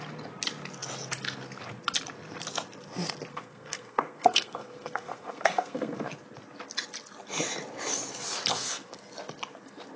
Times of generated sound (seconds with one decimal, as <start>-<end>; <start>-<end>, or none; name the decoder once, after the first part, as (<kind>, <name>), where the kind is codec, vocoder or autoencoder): 3.3-6.1 (codec, SNAC); 8.5-9.0